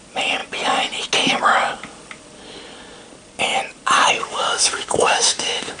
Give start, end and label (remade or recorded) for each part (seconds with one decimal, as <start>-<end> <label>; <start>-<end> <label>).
0.0-4.2 recorded; 4.2-5.8 remade